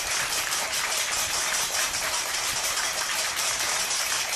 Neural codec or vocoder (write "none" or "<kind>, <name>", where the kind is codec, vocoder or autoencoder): vocoder, BigVGAN v2